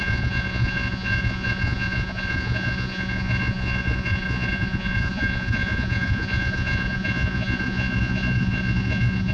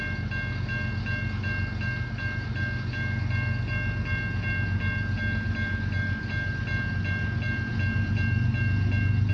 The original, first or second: second